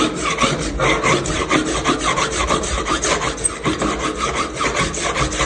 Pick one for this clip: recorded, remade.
recorded